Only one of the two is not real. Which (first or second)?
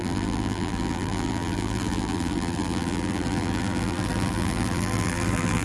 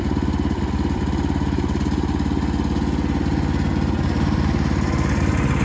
first